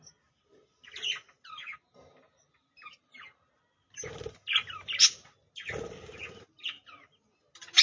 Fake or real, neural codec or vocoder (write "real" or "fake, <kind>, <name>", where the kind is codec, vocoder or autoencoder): real